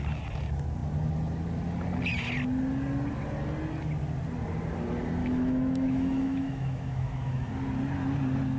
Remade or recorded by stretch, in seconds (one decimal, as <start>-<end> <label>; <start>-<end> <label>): 0.0-5.2 recorded; 5.2-7.5 remade; 7.5-8.6 recorded